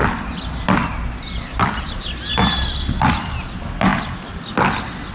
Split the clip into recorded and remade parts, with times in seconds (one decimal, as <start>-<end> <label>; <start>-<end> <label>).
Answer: 0.0-5.1 recorded